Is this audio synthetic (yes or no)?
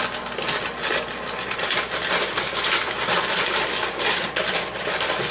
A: no